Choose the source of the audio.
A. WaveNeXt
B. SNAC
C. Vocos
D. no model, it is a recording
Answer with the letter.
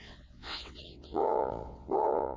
A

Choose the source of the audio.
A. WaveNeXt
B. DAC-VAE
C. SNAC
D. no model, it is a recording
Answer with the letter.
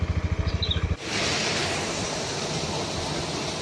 D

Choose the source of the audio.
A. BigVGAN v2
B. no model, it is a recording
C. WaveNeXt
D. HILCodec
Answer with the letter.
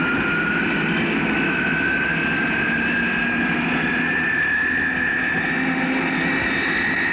B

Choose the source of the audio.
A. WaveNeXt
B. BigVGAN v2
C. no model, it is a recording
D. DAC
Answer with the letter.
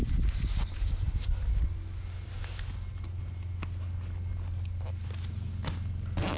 C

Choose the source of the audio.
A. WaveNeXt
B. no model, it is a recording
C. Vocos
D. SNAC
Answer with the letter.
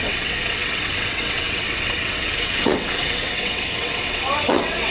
A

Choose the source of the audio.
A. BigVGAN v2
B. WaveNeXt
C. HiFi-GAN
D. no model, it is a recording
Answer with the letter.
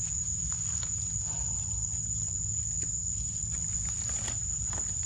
D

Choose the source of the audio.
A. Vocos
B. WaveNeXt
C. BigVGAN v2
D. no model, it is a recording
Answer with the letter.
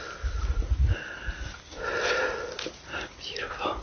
D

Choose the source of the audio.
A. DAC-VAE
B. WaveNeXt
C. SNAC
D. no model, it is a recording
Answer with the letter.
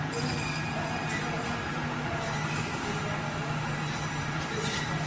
D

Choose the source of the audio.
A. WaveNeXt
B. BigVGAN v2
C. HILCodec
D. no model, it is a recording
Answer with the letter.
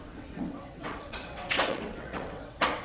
A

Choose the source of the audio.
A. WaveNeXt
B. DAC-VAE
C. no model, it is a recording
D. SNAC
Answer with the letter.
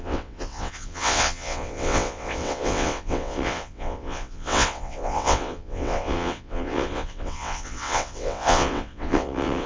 A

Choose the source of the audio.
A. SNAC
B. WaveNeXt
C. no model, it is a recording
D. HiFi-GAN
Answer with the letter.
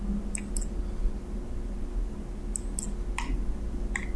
C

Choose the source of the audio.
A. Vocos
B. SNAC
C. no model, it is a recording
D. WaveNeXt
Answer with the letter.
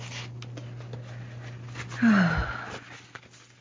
C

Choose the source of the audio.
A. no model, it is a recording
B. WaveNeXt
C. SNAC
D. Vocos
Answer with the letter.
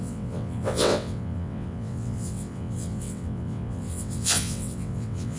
B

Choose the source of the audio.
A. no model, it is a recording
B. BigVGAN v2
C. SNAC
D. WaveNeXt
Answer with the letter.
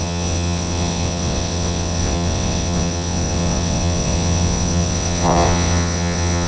D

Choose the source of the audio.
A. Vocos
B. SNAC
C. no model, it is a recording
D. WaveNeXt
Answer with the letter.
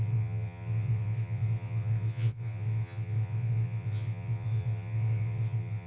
D